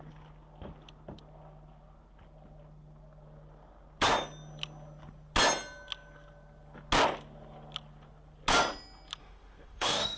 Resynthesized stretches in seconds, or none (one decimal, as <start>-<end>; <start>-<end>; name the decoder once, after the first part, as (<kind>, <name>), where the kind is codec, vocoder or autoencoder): 9.2-10.2 (autoencoder, DAC-VAE)